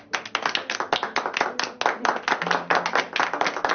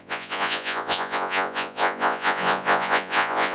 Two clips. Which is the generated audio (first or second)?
second